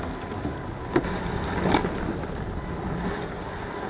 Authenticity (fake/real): real